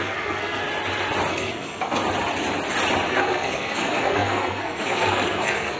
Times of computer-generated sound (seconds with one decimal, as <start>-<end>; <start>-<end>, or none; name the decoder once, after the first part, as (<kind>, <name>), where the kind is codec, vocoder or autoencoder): 0.0-0.6 (codec, SNAC); 1.3-2.0; 3.1-5.8